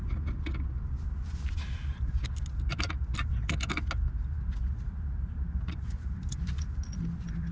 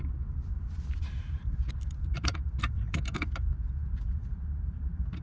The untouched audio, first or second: first